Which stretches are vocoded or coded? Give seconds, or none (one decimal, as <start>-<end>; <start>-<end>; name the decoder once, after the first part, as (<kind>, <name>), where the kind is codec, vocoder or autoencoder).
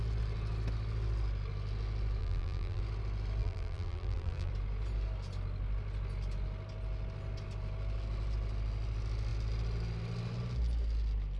2.2-2.8 (vocoder, BigVGAN v2); 3.4-4.5